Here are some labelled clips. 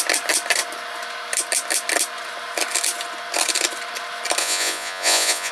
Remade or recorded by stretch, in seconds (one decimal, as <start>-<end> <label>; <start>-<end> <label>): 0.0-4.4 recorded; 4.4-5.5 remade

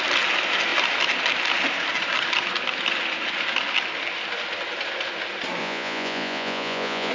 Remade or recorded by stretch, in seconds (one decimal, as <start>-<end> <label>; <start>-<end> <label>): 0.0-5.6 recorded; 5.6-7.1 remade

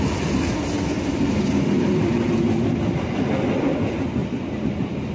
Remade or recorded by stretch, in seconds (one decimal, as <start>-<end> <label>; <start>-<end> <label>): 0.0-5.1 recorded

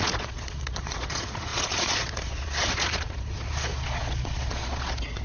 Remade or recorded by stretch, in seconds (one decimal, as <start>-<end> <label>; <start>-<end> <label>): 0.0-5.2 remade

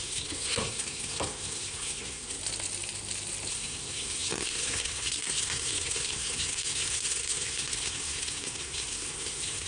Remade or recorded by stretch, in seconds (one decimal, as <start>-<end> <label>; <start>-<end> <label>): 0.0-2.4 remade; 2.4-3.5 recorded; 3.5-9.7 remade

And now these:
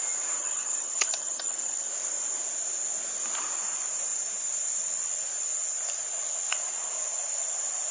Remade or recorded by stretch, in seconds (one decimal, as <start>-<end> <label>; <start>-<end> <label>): 0.0-0.4 recorded; 0.4-1.9 remade; 1.9-7.9 recorded

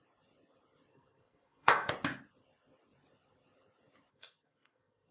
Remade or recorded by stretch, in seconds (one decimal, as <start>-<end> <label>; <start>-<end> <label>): 0.0-0.9 recorded; 0.9-1.9 remade; 1.9-4.1 recorded; 4.1-5.1 remade

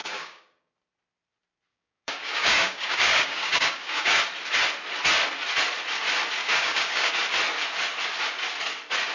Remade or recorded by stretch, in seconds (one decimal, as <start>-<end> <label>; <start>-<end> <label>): 0.0-0.7 remade; 0.7-1.7 recorded; 1.7-4.2 remade; 4.2-6.4 recorded; 6.4-7.1 remade; 7.1-9.1 recorded